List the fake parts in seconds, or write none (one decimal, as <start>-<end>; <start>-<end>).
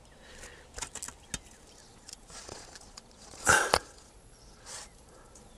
1.8-5.6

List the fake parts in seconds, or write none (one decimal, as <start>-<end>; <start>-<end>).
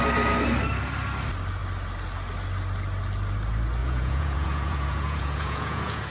3.8-6.1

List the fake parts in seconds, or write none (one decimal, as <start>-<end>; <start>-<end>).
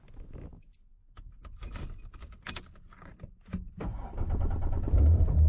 none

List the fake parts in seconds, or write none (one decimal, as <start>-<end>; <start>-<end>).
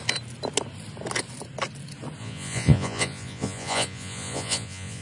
2.2-5.0